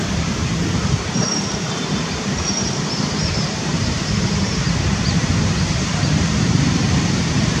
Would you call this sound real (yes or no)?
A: no